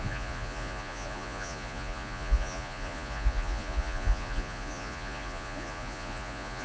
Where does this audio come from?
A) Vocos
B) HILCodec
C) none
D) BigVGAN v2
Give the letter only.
A